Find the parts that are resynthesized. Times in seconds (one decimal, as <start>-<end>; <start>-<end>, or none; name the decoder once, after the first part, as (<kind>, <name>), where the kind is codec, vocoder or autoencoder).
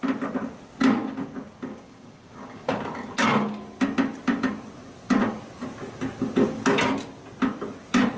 1.7-2.8 (codec, DAC)